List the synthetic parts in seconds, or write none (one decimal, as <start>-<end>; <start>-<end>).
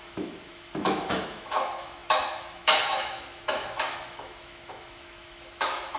0.0-6.0